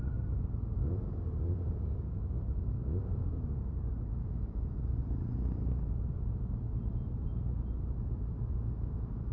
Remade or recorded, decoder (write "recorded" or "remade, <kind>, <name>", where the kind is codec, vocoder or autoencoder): recorded